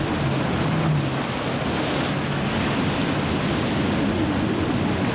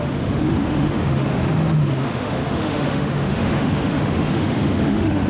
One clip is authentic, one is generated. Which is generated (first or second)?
second